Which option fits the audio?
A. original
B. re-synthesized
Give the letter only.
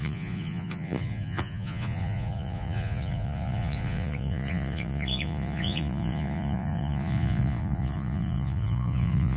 B